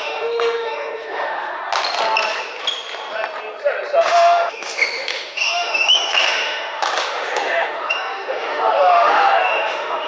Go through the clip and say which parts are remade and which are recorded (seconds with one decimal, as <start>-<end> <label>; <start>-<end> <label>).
0.0-1.6 remade; 1.6-4.0 recorded; 4.0-10.1 remade